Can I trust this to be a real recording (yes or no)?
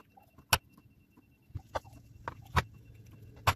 yes